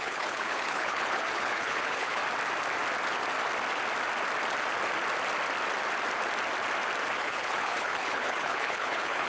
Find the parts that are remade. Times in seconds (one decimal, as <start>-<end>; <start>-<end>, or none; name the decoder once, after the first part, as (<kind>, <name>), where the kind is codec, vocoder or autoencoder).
0.0-2.2 (codec, HILCodec); 7.2-9.3